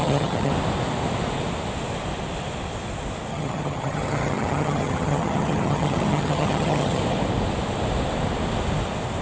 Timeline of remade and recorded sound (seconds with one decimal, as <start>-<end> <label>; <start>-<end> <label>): 0.0-0.5 remade; 0.5-3.3 recorded; 3.3-7.0 remade; 7.0-9.2 recorded